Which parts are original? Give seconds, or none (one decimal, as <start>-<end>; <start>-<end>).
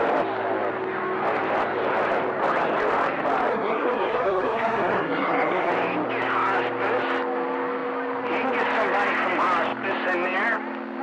0.0-3.5; 5.7-11.0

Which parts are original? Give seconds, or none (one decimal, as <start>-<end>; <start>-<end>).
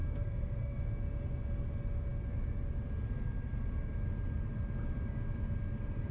0.8-6.1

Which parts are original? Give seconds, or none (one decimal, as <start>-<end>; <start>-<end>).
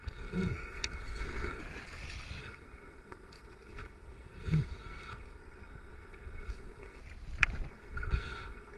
1.6-2.4; 7.0-7.7